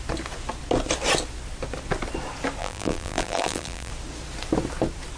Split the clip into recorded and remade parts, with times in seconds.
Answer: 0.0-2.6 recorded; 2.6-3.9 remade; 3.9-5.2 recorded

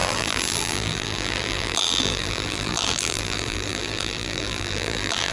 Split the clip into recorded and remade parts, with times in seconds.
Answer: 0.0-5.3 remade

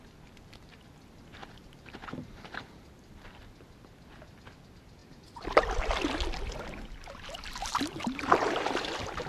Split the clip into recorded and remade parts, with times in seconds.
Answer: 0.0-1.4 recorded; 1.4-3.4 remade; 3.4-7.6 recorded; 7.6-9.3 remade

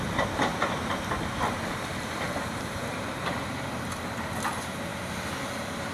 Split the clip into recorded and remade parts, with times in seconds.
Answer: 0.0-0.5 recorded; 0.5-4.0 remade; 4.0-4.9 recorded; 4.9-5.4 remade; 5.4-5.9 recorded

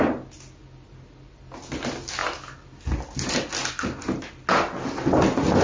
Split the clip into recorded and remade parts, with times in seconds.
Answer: 0.0-5.6 recorded

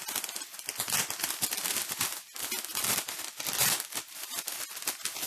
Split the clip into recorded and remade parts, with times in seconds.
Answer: 0.0-3.6 recorded; 3.6-4.6 remade; 4.6-5.3 recorded

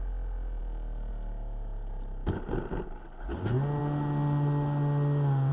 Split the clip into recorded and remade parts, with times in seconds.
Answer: 0.0-5.5 recorded

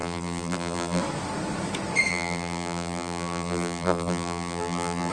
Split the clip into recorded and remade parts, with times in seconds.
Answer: 0.0-1.0 remade; 1.0-2.1 recorded; 2.1-5.1 remade